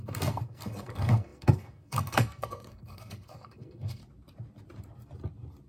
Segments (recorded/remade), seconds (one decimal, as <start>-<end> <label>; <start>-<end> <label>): 0.0-4.0 remade; 4.0-5.7 recorded